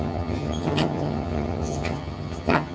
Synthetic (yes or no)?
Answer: yes